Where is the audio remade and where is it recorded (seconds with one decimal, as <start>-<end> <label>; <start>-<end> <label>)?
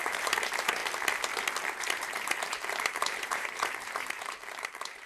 0.0-0.8 remade; 0.8-2.0 recorded; 2.0-5.1 remade